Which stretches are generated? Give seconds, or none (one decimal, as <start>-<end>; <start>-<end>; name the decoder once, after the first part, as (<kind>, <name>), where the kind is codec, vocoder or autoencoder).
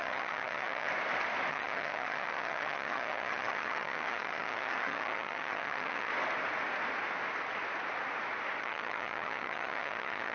0.0-0.9 (vocoder, HiFi-GAN); 1.5-6.1; 8.6-10.3